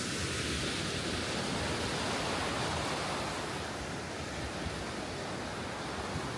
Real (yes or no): yes